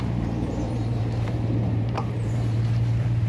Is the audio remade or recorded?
remade